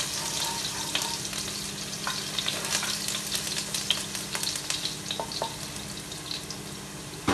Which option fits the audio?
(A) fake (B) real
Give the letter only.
B